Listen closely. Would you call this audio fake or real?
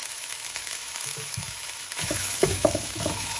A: fake